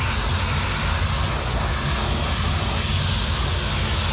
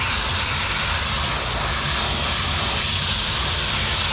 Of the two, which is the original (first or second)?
first